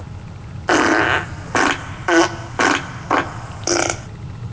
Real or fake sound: real